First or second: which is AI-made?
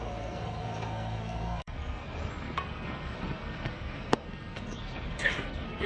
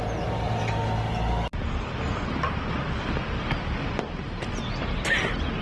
first